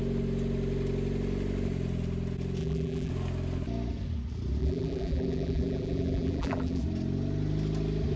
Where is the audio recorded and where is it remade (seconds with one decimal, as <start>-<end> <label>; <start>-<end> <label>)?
0.0-2.6 recorded; 2.6-3.1 remade; 3.1-4.6 recorded; 4.6-6.8 remade; 6.8-8.2 recorded